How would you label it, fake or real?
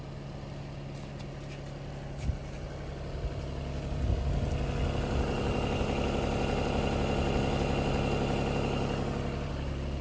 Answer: real